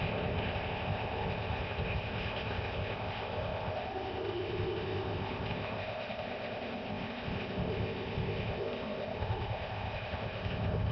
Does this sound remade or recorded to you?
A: remade